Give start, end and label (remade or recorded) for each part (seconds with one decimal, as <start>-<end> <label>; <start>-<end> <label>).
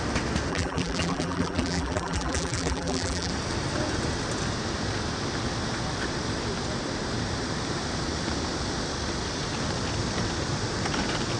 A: 0.0-0.5 recorded; 0.5-3.3 remade; 3.3-11.4 recorded